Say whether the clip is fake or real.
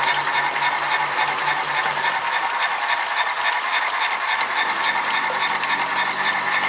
real